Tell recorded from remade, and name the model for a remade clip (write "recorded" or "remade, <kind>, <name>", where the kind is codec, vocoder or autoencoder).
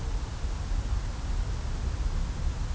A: recorded